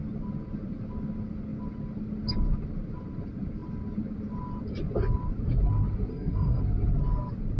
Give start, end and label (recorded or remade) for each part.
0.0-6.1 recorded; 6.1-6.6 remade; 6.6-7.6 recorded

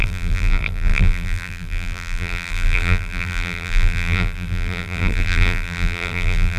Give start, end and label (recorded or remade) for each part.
0.0-6.6 remade

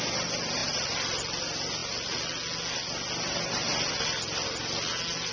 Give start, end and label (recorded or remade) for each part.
0.0-5.3 recorded

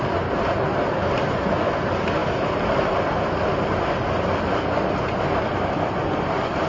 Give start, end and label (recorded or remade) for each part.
0.0-6.7 recorded

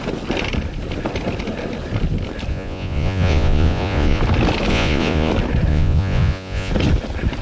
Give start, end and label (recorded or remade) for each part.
0.0-2.5 recorded; 2.5-4.2 remade; 4.2-4.7 recorded; 4.7-5.3 remade; 5.3-5.7 recorded; 5.7-6.7 remade; 6.7-7.4 recorded

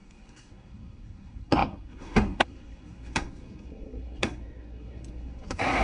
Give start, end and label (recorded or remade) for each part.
0.0-5.8 remade